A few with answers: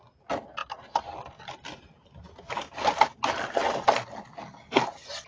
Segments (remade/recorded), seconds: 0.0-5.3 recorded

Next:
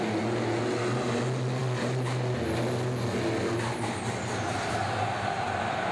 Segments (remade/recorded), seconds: 0.0-5.9 recorded

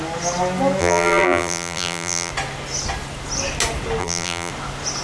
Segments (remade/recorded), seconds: 0.0-0.8 recorded; 0.8-2.3 remade; 2.3-4.0 recorded; 4.0-4.5 remade; 4.5-5.0 recorded

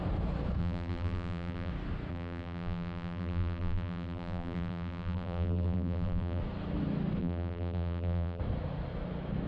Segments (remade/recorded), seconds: 0.0-0.6 recorded; 0.6-1.7 remade; 1.7-2.1 recorded; 2.1-6.4 remade; 6.4-7.2 recorded; 7.2-8.4 remade; 8.4-9.5 recorded

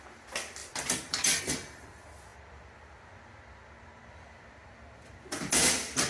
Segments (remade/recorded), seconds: 0.0-0.6 recorded; 0.6-1.4 remade; 1.4-2.3 recorded; 2.3-6.1 remade

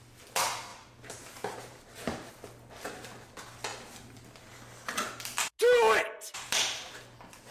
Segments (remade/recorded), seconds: 0.0-0.7 recorded; 0.7-2.3 remade; 2.3-7.5 recorded

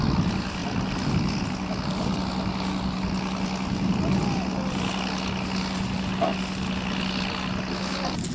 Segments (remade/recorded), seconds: 0.0-8.3 recorded